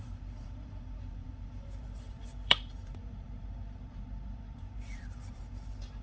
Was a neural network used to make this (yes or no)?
yes